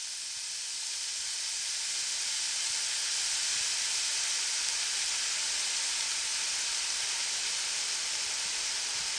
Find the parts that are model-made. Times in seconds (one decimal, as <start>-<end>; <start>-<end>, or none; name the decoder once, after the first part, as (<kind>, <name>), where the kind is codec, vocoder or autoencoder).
none